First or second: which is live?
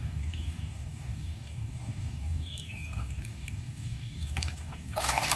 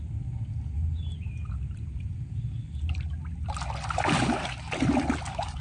second